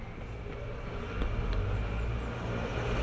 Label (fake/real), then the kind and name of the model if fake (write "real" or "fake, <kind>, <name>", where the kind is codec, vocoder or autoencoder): real